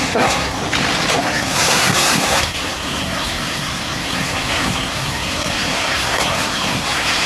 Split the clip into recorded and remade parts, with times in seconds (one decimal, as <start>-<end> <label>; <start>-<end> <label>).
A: 0.0-0.6 remade; 0.6-1.2 recorded; 1.2-7.3 remade